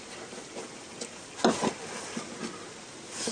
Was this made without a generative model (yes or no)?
yes